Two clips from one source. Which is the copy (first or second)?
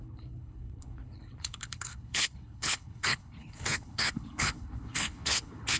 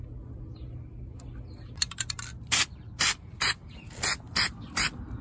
first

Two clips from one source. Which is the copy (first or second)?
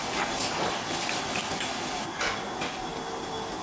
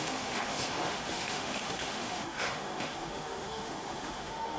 second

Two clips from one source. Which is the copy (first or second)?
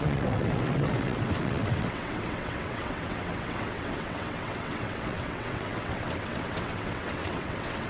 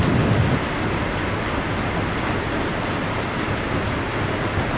first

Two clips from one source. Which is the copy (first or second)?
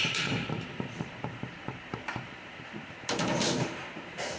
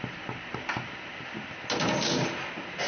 first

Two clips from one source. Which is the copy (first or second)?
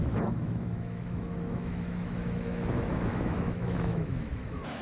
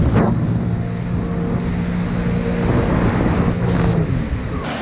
first